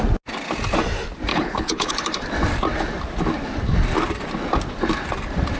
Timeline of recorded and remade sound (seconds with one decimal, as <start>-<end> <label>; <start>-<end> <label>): 0.0-1.3 recorded; 1.3-1.9 remade; 1.9-5.6 recorded